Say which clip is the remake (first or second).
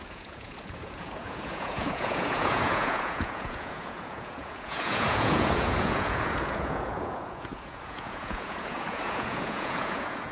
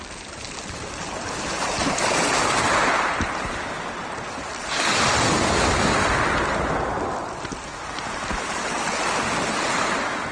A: first